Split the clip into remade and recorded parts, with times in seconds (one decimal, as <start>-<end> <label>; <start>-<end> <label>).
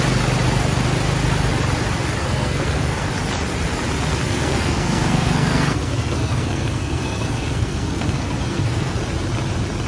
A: 0.0-2.2 recorded; 2.2-3.1 remade; 3.1-4.1 recorded; 4.1-9.0 remade; 9.0-9.9 recorded